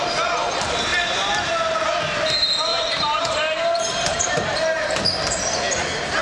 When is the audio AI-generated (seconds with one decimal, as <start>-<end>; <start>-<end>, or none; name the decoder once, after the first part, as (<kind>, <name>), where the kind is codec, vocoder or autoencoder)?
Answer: 0.9-1.5 (vocoder, BigVGAN v2); 2.7-5.0